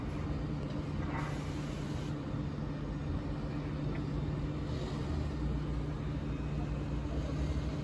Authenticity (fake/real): real